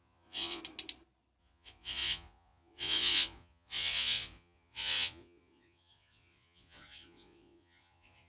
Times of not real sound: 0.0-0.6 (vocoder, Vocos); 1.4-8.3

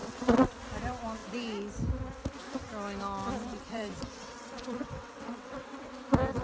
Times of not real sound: 0.0-0.6 (vocoder, WaveNeXt); 3.5-5.9